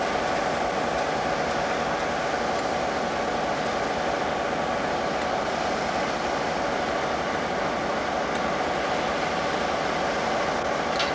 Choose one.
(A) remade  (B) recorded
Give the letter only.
B